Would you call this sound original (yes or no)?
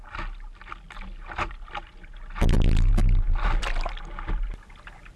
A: yes